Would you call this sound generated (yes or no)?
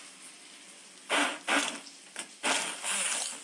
no